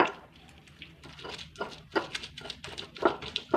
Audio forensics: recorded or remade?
recorded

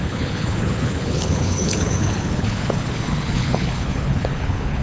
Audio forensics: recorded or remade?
remade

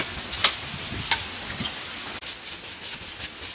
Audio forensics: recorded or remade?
recorded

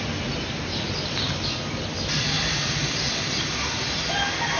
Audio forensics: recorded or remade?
recorded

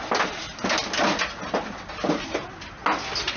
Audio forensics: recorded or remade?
recorded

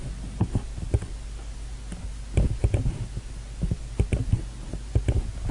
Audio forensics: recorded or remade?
recorded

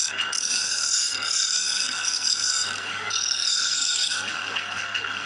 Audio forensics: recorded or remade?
remade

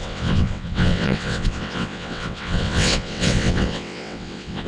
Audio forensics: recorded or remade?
remade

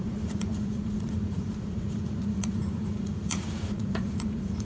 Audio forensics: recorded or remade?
remade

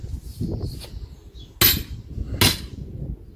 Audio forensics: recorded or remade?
recorded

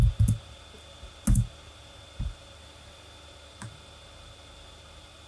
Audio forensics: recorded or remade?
recorded